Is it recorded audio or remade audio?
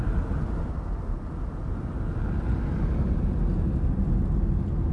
recorded